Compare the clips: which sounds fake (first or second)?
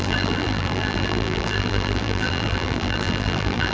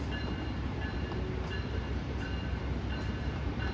first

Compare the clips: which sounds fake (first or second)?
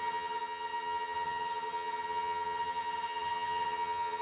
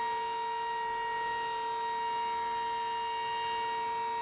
first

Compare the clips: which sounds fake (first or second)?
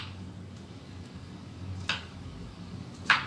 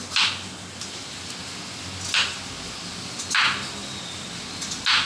first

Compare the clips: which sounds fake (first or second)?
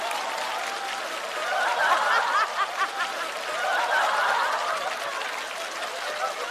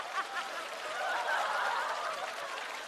second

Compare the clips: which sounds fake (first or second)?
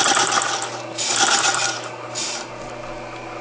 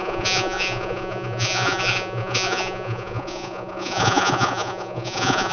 second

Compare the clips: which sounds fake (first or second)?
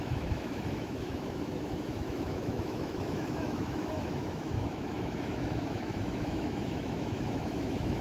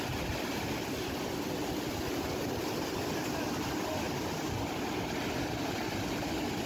first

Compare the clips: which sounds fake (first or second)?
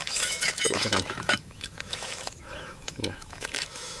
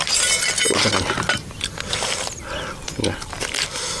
first